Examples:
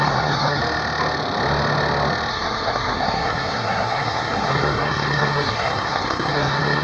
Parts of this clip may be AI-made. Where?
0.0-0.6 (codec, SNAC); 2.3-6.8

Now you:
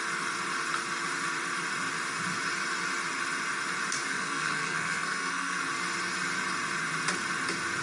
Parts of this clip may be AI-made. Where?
4.1-5.6 (codec, SNAC)

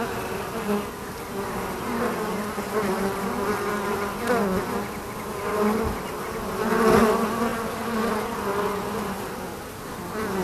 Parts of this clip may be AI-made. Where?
none

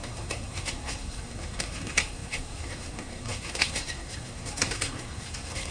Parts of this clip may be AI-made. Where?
0.0-5.7 (codec, SNAC)